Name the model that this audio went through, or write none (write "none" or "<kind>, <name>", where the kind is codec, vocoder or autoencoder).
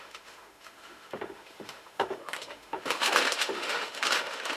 autoencoder, DAC-VAE